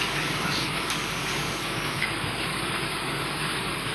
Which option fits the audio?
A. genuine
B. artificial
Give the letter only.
B